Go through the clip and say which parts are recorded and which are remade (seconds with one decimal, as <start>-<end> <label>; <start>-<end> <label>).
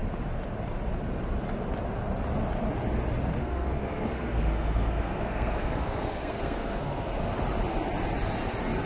0.0-3.4 recorded; 3.4-7.1 remade; 7.1-8.9 recorded